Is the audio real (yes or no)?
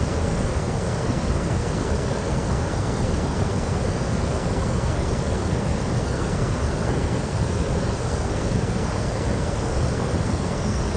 no